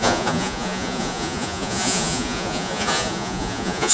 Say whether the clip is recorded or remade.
remade